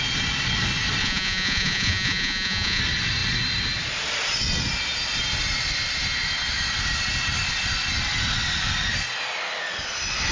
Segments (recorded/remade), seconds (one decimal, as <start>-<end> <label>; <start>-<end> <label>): 0.0-1.0 recorded; 1.0-2.8 remade; 2.8-10.3 recorded